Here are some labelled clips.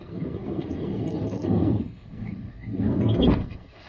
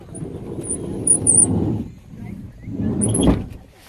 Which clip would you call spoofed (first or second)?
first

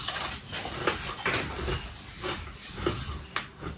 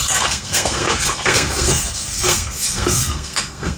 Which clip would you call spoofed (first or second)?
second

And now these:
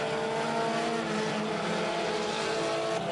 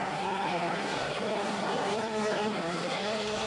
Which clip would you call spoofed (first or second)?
second